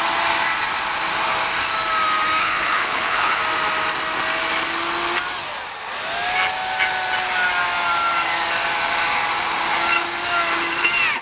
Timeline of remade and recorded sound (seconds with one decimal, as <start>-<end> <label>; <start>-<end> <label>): 0.0-2.4 recorded; 2.4-3.4 remade; 3.4-11.2 recorded